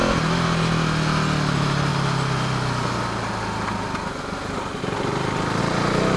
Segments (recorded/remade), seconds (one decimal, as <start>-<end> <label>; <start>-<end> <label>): 0.0-6.2 recorded

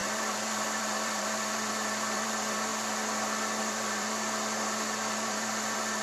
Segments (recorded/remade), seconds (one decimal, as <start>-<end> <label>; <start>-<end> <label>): 0.0-2.7 remade; 2.7-3.6 recorded; 3.6-6.0 remade

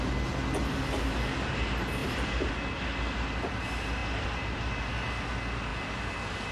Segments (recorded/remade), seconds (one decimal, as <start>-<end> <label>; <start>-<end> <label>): 0.0-0.6 recorded; 0.6-1.5 remade; 1.5-2.0 recorded; 2.0-2.5 remade; 2.5-6.5 recorded

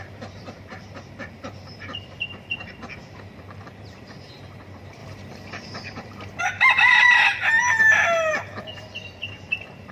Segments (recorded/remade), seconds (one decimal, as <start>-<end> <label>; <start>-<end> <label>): 0.0-7.4 remade; 7.4-8.3 recorded; 8.3-9.9 remade

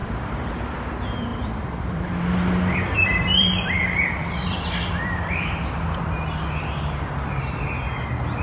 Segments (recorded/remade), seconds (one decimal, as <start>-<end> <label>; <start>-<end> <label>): 0.0-0.5 remade; 0.5-1.3 recorded; 1.3-6.0 remade; 6.0-8.4 recorded

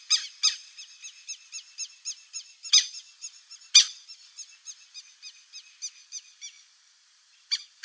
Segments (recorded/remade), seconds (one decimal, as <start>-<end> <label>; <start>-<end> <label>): 0.0-6.0 recorded; 6.0-7.8 remade